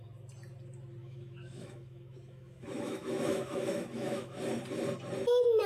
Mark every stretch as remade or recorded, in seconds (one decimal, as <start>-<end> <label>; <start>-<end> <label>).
0.0-1.0 recorded; 1.0-4.4 remade; 4.4-5.7 recorded